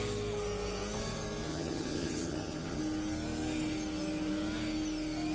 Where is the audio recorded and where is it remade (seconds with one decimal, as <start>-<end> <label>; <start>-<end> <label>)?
0.0-1.5 recorded; 1.5-2.8 remade; 2.8-5.3 recorded